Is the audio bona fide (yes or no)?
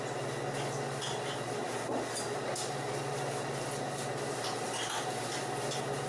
yes